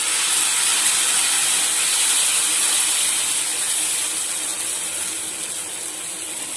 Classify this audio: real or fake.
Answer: real